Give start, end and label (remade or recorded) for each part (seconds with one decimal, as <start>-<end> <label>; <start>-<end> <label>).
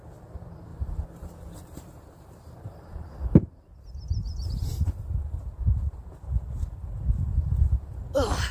0.0-0.7 recorded; 0.7-3.7 remade; 3.7-4.2 recorded; 4.2-5.4 remade; 5.4-8.5 recorded